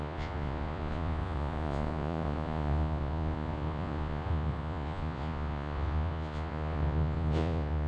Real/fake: fake